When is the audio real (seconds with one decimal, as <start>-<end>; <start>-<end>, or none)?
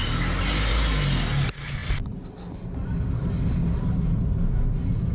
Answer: 0.0-5.1